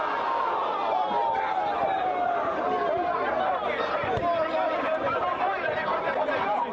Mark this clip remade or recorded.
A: recorded